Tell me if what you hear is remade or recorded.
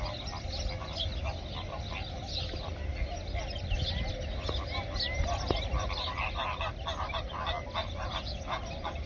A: recorded